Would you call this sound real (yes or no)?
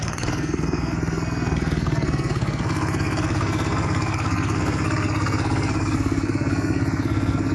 no